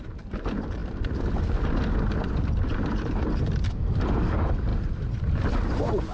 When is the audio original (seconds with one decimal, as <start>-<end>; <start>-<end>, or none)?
none